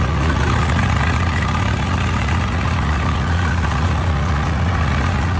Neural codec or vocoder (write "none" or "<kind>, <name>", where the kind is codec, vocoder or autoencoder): vocoder, Vocos